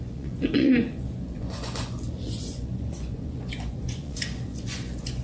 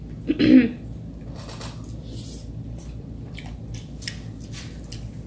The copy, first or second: first